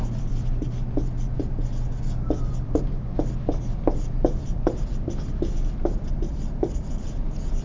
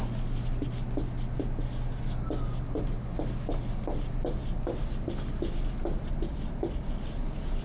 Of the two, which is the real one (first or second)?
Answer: second